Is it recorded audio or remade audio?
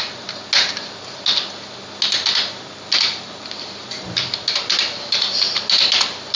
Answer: recorded